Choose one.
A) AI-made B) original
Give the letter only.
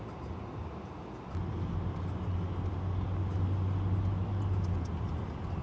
B